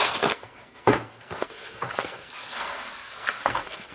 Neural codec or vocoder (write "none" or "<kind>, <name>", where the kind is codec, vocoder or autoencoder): codec, SNAC